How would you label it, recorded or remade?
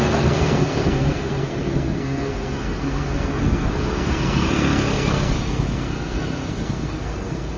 remade